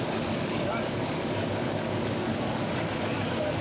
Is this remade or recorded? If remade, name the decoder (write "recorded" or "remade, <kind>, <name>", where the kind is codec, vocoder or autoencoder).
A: remade, codec, DAC